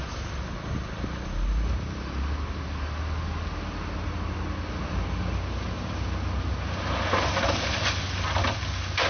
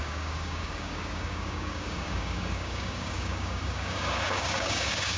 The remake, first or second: second